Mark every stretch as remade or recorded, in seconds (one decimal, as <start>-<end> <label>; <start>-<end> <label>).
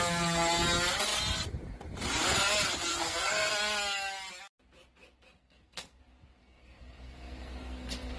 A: 0.0-2.9 recorded; 2.9-3.5 remade; 3.5-5.4 recorded; 5.4-6.0 remade; 6.0-6.4 recorded; 6.4-8.2 remade